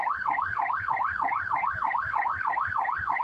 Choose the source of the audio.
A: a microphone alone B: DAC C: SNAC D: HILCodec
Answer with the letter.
B